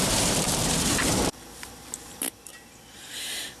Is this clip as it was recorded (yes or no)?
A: no